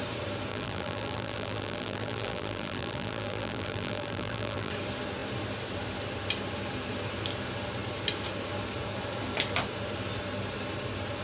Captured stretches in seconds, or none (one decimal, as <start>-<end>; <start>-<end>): 0.0-0.5; 4.7-11.2